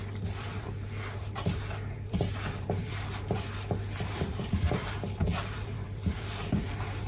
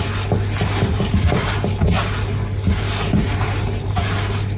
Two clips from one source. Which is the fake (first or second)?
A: first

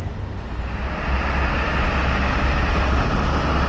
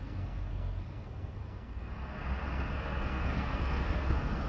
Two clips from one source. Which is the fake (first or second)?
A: second